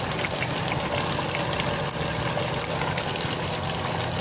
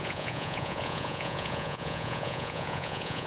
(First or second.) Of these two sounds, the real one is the first